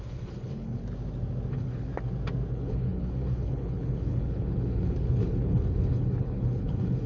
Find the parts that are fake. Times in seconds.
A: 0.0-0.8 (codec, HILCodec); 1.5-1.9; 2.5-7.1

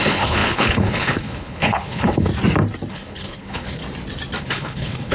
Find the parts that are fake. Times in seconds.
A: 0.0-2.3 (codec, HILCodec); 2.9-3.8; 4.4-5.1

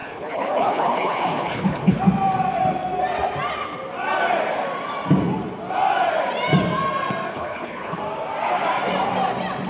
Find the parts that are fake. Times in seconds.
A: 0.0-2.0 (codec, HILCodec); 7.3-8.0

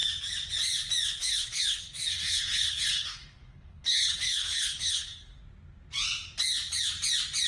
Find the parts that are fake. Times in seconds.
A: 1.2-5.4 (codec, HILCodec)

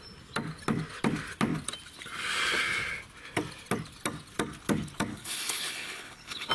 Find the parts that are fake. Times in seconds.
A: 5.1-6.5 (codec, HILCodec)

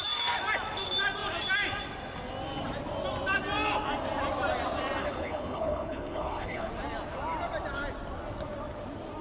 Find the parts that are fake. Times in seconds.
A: 5.0-6.7 (codec, HILCodec)

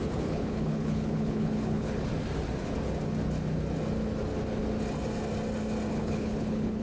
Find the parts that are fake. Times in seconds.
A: 0.0-2.1 (codec, HILCodec); 5.9-6.8